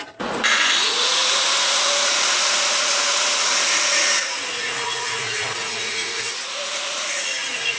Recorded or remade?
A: remade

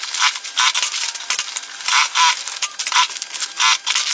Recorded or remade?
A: recorded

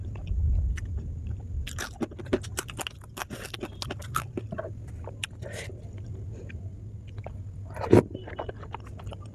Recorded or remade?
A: recorded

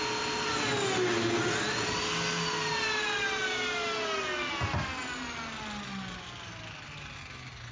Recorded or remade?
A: recorded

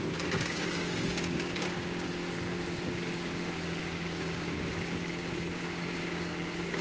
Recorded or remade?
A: remade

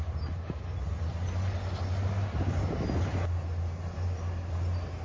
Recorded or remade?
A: recorded